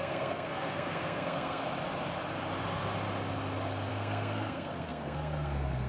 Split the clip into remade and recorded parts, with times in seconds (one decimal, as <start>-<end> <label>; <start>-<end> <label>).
0.0-1.6 remade; 1.6-3.9 recorded; 3.9-5.9 remade